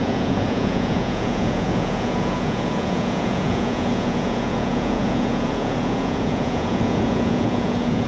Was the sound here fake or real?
fake